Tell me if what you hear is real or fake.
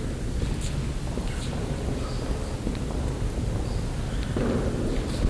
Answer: real